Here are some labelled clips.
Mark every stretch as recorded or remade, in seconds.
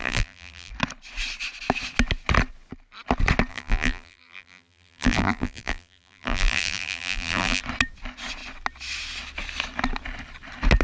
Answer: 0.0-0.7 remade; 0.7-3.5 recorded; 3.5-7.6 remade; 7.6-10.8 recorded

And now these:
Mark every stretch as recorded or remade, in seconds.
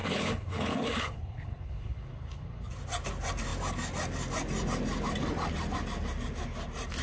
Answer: 0.0-2.7 remade; 2.7-7.0 recorded